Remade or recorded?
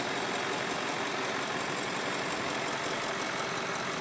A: recorded